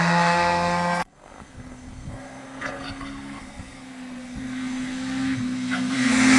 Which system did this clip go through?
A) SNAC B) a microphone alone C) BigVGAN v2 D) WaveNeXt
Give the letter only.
A